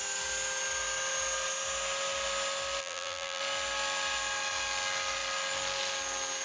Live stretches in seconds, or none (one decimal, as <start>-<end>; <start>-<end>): 0.0-2.8; 3.4-6.4